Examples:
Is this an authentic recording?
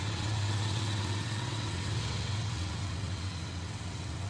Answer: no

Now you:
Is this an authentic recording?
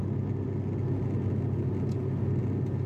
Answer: yes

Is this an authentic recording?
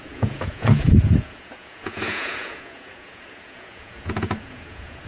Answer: no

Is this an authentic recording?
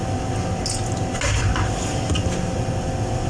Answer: yes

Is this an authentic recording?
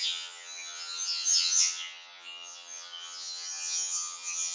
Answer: no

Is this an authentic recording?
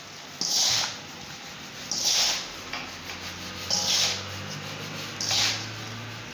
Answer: yes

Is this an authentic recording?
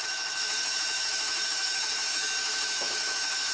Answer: no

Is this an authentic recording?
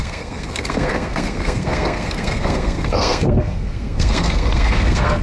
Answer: no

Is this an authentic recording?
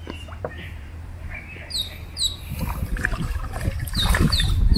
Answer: no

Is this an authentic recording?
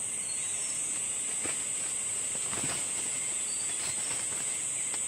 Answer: yes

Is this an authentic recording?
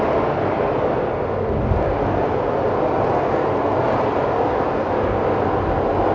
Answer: yes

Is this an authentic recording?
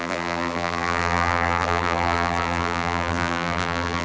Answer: no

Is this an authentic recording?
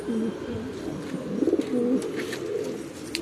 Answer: yes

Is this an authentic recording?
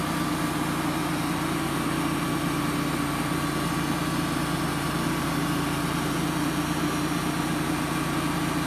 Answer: yes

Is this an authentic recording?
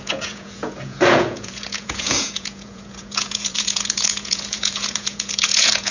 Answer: no